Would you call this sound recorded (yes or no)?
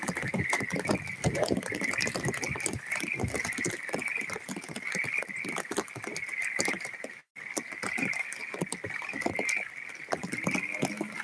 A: yes